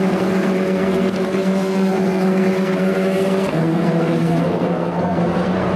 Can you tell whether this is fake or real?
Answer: fake